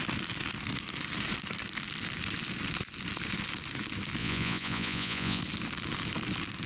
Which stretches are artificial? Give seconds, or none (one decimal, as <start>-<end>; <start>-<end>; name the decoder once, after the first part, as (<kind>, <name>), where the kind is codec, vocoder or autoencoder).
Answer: 4.2-5.4 (vocoder, Vocos)